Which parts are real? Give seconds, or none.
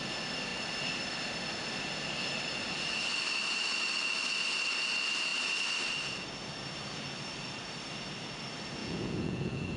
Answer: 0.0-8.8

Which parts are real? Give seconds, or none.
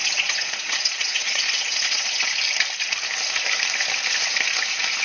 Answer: 2.3-5.0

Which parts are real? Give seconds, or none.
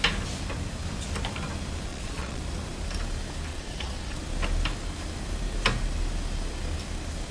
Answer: 0.0-1.9; 2.4-3.5; 4.2-7.3